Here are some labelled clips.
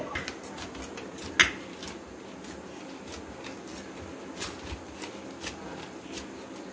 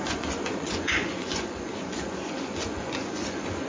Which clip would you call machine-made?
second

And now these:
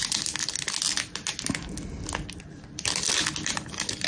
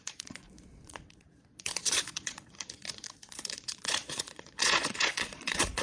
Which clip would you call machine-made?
second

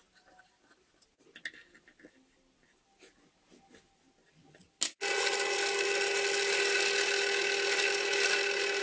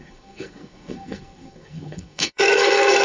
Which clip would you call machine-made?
second